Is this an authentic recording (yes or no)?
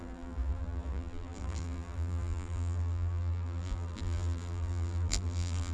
no